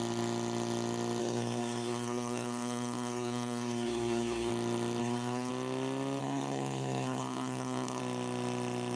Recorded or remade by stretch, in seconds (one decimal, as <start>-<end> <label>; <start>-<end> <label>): 0.0-1.2 recorded; 1.2-4.5 remade; 4.5-5.0 recorded; 5.0-5.5 remade; 5.5-6.2 recorded; 6.2-8.0 remade; 8.0-9.0 recorded